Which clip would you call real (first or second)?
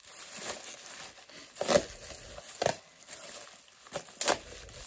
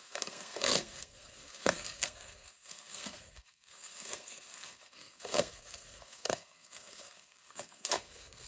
first